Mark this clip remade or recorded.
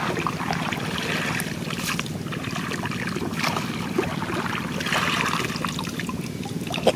recorded